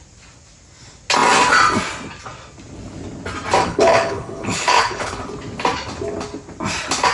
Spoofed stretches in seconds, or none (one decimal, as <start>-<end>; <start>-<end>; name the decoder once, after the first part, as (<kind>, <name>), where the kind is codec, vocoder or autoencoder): 3.6-5.2 (codec, HILCodec)